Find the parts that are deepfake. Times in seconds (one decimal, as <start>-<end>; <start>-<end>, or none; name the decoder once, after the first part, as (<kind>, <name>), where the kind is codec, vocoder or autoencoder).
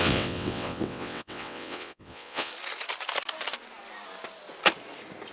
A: 0.0-2.5 (vocoder, WaveNeXt)